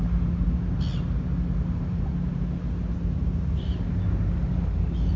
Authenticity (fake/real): real